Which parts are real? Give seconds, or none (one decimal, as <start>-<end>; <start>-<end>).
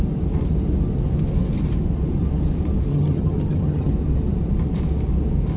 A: 0.0-2.9; 3.9-5.6